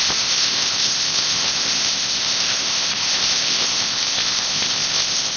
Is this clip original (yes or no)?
no